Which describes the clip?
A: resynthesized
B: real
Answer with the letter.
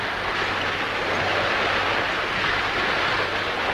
B